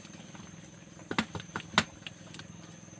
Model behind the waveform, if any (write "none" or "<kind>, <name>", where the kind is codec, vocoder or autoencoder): none